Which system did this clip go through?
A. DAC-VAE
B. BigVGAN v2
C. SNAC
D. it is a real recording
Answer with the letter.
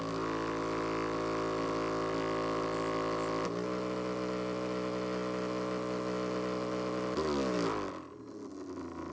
D